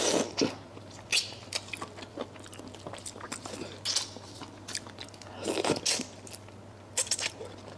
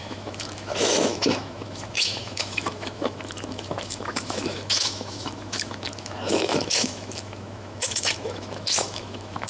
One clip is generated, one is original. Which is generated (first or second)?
second